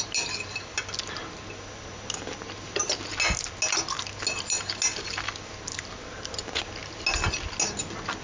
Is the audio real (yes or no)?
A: yes